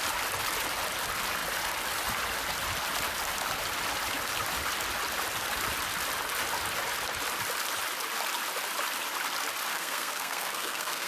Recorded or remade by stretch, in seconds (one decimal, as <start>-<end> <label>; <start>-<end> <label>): 0.0-9.7 recorded; 9.7-11.1 remade